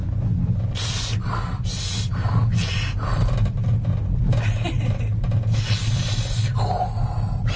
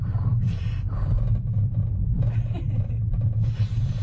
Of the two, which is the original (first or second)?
first